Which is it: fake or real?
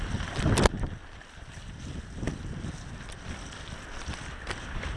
fake